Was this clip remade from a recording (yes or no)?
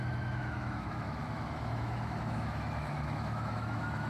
yes